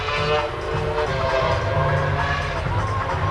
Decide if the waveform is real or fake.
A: real